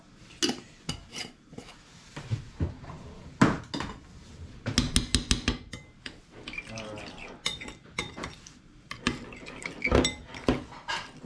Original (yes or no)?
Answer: yes